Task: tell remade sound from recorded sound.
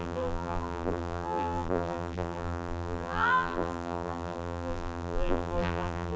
remade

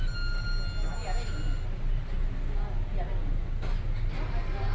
recorded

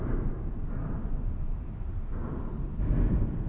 remade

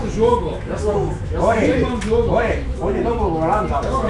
remade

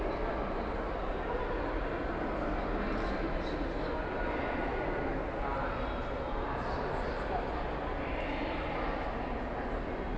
recorded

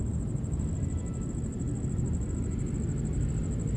recorded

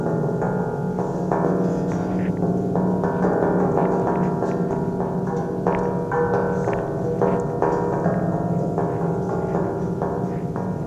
recorded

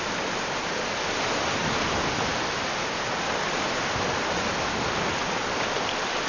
recorded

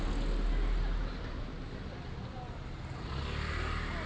recorded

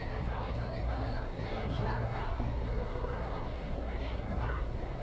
remade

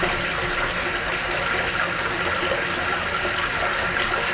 recorded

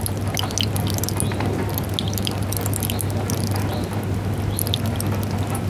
recorded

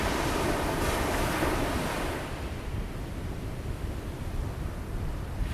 recorded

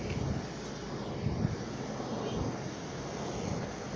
recorded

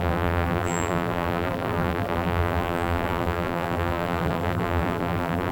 remade